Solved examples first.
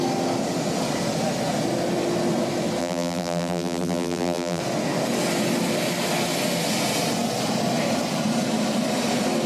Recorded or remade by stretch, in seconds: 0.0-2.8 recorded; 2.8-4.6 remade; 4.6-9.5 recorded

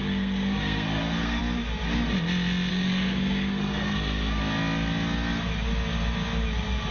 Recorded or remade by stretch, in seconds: 0.0-1.4 remade; 1.4-2.7 recorded; 2.7-4.4 remade; 4.4-6.9 recorded

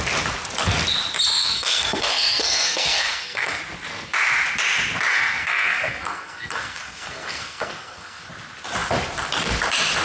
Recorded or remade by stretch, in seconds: 0.0-1.4 recorded; 1.4-3.6 remade; 3.6-5.1 recorded; 5.1-8.3 remade; 8.3-10.0 recorded

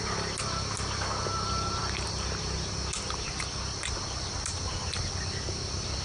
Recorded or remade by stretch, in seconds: 0.0-6.0 recorded

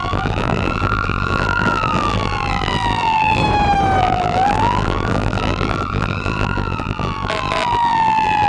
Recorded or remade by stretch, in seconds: 0.0-3.4 remade; 3.4-4.0 recorded; 4.0-8.5 remade

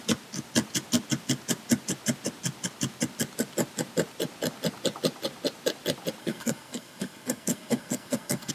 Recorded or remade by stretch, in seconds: 0.0-6.2 recorded; 6.2-8.5 remade